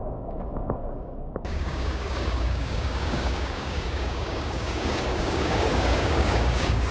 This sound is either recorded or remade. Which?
remade